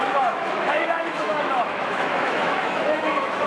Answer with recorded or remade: remade